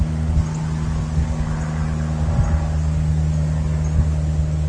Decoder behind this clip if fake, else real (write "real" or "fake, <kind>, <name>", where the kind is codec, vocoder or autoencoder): real